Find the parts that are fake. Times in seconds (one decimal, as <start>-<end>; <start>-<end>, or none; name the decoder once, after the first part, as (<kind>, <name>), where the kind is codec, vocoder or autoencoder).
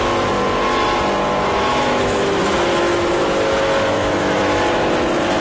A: 1.4-4.6 (autoencoder, DAC-VAE)